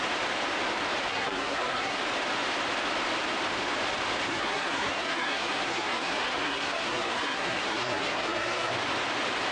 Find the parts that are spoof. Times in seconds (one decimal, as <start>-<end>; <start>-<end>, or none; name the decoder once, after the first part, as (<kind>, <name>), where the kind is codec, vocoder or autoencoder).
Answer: 1.1-2.0 (codec, SNAC); 4.3-8.7